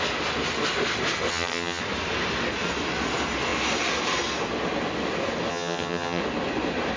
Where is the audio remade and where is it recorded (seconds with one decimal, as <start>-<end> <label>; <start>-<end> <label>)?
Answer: 0.0-1.3 recorded; 1.3-1.8 remade; 1.8-5.5 recorded; 5.5-6.2 remade; 6.2-7.0 recorded